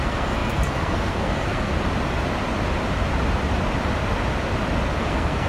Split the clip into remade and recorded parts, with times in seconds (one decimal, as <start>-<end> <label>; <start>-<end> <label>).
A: 0.0-1.7 remade; 1.7-5.0 recorded; 5.0-5.5 remade